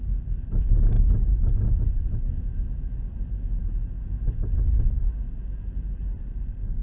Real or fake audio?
real